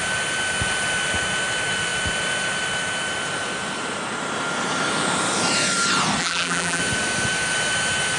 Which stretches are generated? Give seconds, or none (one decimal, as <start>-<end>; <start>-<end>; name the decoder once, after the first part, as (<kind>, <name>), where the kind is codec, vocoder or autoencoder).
6.2-6.8 (vocoder, BigVGAN v2)